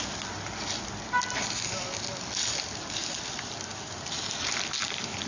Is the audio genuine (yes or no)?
yes